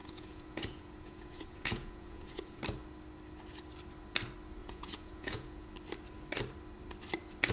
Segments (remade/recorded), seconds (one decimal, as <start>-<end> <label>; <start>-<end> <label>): 0.0-2.6 remade; 2.6-4.6 recorded; 4.6-5.7 remade; 5.7-7.5 recorded